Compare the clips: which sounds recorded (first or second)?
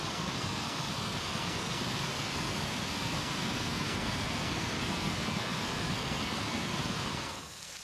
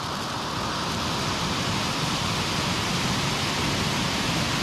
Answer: second